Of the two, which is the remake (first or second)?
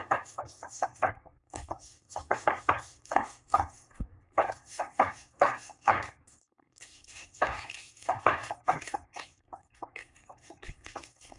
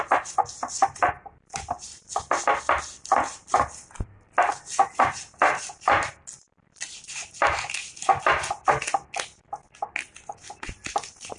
first